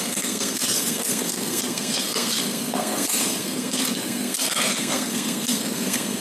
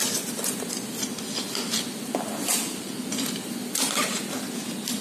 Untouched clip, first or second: second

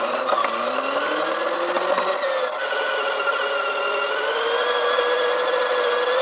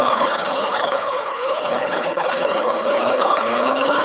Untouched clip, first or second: first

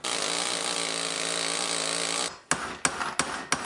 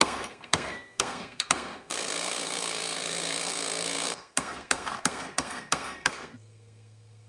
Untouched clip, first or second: first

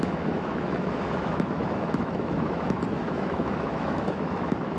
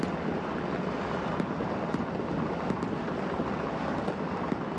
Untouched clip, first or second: second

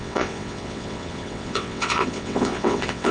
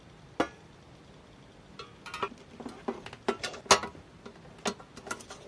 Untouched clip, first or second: second